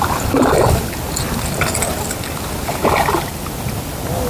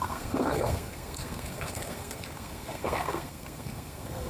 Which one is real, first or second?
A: first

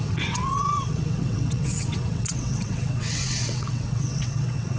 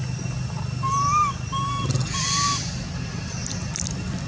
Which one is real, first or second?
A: second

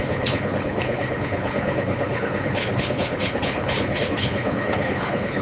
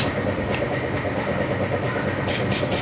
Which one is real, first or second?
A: second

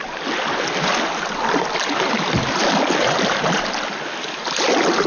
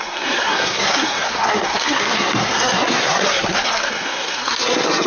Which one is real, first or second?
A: first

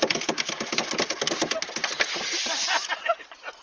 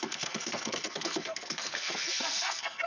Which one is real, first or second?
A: first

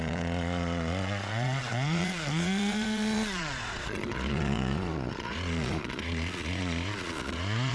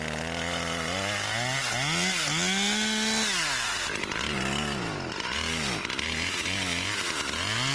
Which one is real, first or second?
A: second